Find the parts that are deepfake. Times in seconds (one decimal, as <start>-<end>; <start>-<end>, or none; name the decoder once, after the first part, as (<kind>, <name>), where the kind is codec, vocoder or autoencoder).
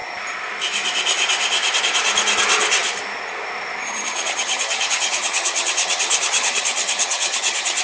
3.8-7.8 (vocoder, HiFi-GAN)